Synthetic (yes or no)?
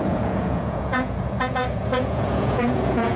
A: yes